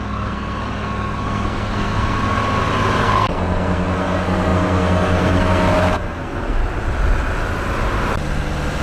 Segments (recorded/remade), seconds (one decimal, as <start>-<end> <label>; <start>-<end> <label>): 0.0-2.4 remade; 2.4-3.0 recorded; 3.0-6.6 remade; 6.6-8.8 recorded